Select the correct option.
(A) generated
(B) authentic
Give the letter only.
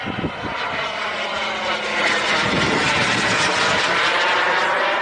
B